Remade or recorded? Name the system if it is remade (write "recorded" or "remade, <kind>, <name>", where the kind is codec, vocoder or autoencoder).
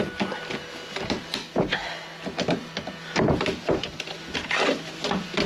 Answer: remade, vocoder, BigVGAN v2